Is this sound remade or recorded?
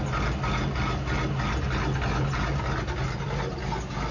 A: recorded